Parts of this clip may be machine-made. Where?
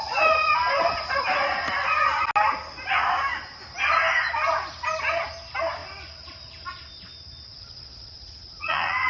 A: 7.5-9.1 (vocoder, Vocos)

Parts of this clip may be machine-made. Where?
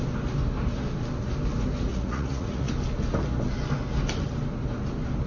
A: 1.9-2.7 (vocoder, Vocos)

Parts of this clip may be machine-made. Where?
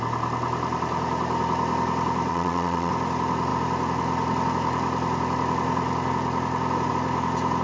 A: 2.3-2.9 (vocoder, Vocos)